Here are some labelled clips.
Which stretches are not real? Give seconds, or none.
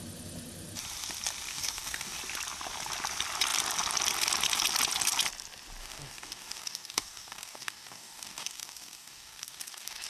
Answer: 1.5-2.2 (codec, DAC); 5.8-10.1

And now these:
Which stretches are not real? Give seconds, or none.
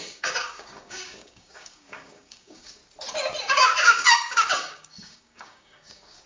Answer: 0.0-2.8 (codec, DAC); 3.4-6.3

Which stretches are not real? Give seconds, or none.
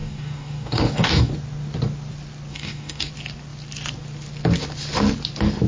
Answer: 0.0-1.3 (codec, DAC); 2.5-3.1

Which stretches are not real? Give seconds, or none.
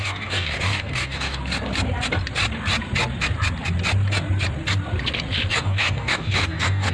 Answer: 0.0-1.4 (codec, DAC); 5.5-6.9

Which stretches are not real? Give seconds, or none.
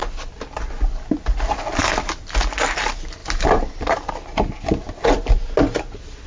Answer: none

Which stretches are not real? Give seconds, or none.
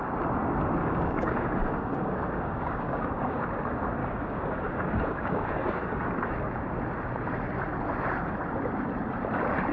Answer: 0.8-3.4 (codec, DAC); 4.0-6.3